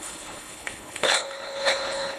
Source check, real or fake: fake